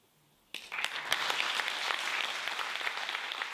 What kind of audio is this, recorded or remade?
recorded